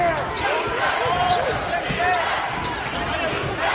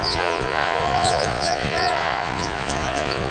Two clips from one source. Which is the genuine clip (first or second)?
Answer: first